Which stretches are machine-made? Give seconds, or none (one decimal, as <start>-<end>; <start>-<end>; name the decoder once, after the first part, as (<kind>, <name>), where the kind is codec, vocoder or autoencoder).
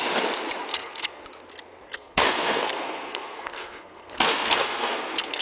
0.7-1.2 (codec, SNAC); 1.9-5.4